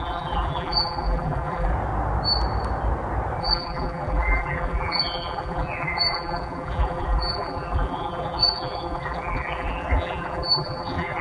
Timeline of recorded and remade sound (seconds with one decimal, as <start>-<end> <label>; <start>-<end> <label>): 0.0-1.7 remade; 1.7-3.4 recorded; 3.4-11.2 remade